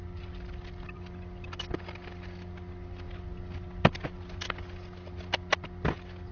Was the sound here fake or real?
real